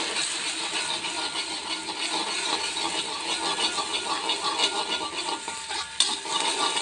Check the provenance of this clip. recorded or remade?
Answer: recorded